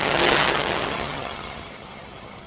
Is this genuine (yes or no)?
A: no